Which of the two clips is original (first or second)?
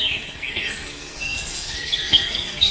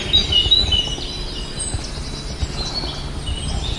second